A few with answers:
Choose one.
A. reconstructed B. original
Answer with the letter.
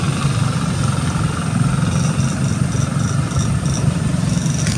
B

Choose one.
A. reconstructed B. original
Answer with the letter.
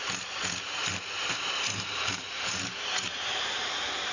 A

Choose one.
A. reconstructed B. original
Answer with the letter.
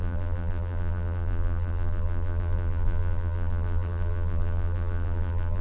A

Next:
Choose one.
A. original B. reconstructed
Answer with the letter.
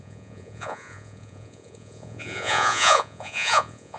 B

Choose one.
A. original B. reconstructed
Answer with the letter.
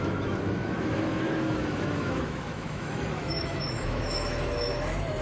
B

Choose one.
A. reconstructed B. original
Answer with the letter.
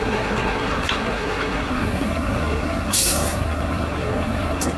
A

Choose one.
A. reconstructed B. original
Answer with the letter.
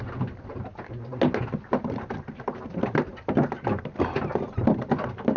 B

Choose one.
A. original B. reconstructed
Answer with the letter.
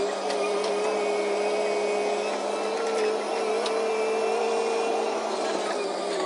A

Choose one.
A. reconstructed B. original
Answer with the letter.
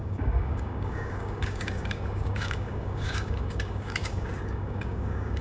A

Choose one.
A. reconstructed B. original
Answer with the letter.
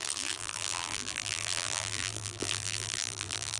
A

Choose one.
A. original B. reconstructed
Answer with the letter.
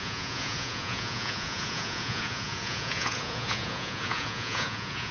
B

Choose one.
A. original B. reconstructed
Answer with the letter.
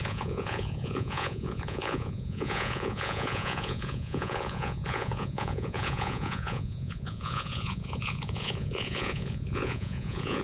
B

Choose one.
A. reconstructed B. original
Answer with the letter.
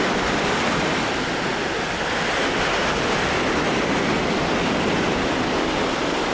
B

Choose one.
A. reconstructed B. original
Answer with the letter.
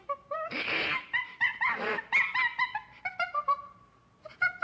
B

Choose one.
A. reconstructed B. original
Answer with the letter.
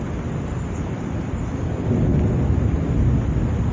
B